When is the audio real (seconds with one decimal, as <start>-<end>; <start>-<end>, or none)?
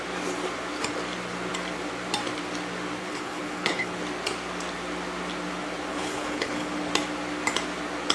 0.0-3.0; 4.0-5.9; 6.9-8.1